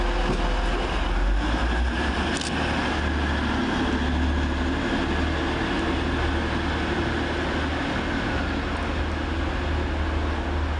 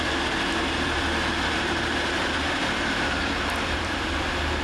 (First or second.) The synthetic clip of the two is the second